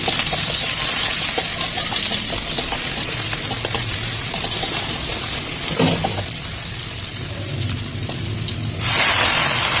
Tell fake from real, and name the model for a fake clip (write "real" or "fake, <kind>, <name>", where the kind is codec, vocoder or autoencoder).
real